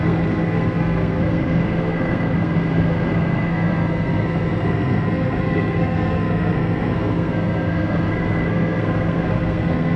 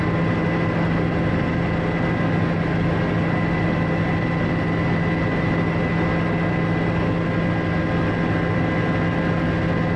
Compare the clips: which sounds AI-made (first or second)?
first